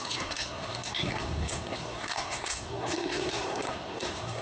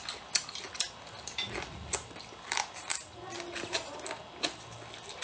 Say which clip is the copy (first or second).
first